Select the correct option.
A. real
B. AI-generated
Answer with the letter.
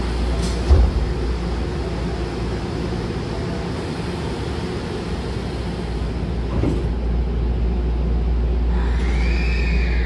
A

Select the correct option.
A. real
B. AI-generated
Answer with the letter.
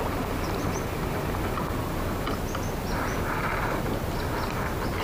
A